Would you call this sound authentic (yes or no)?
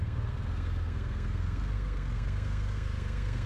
no